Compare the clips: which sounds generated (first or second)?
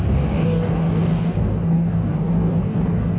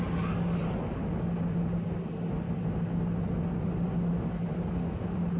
first